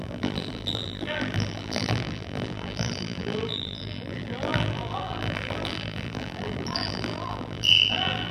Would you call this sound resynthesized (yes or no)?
yes